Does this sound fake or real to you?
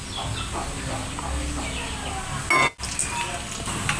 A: real